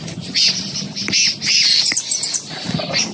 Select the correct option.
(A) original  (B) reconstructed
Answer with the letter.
B